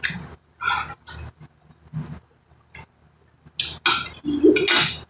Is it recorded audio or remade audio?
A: recorded